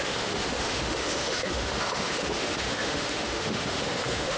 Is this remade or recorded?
remade